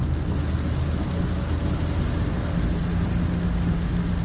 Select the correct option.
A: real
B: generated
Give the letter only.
A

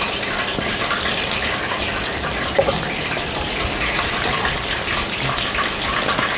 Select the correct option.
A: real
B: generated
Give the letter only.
A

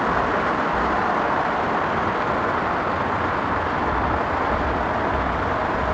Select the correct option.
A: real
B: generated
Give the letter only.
A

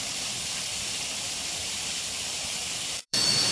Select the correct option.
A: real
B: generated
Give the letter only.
B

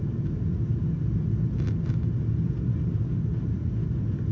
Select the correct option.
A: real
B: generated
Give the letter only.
A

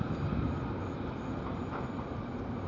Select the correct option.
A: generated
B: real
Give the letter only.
B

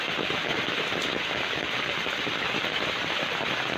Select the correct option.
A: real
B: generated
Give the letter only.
A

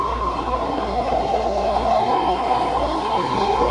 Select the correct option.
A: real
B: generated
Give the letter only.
B